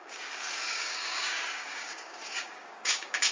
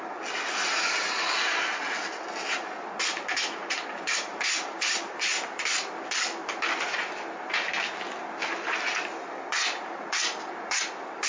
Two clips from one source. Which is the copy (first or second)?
first